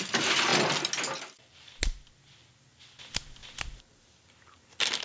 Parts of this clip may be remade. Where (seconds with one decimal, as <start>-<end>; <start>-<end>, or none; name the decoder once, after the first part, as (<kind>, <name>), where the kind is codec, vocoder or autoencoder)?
none